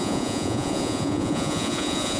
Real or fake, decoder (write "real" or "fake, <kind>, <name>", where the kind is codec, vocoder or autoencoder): fake, vocoder, Vocos